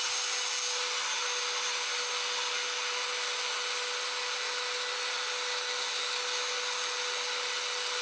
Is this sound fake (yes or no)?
no